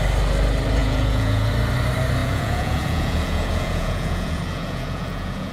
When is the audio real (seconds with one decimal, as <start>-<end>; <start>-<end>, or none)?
0.0-0.8; 1.5-2.2